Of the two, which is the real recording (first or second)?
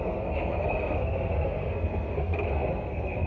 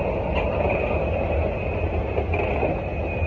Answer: second